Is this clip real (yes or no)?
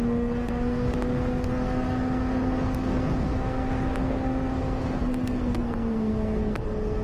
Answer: no